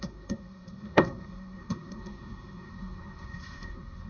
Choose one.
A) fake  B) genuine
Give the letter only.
A